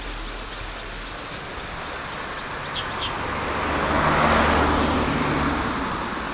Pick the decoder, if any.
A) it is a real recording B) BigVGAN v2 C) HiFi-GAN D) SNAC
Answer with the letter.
A